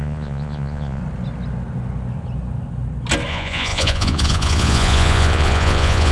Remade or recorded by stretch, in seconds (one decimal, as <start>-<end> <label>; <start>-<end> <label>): 0.0-1.0 remade; 1.0-3.3 recorded; 3.3-6.1 remade